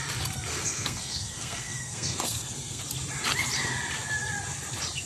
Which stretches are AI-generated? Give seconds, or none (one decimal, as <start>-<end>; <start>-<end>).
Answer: 0.5-2.8